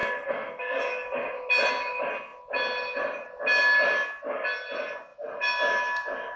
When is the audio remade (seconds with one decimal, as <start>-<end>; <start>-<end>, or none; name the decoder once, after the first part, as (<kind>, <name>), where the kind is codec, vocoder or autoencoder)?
0.0-0.8 (codec, SNAC)